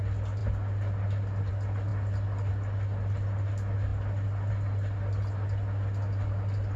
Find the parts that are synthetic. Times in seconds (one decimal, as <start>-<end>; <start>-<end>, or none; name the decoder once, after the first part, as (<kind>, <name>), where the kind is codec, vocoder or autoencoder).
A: none